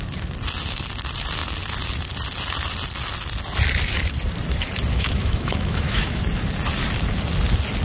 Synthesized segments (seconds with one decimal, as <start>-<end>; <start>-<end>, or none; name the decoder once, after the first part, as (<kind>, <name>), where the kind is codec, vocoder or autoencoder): 4.9-6.2 (autoencoder, DAC-VAE)